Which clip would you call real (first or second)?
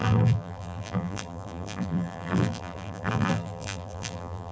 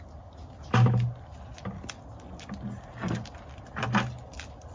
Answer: second